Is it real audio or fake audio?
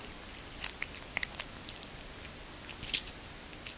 real